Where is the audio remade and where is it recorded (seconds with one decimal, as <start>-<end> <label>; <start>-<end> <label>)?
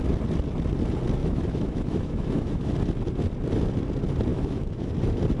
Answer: 0.0-1.2 recorded; 1.2-2.7 remade; 2.7-4.3 recorded; 4.3-4.9 remade; 4.9-5.4 recorded